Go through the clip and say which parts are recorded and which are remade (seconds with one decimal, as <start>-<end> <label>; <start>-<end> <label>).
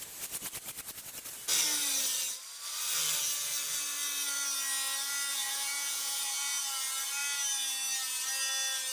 0.0-5.3 recorded; 5.3-6.8 remade; 6.8-8.9 recorded